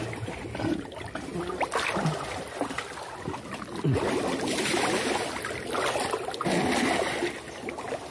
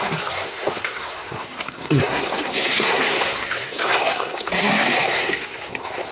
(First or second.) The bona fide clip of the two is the first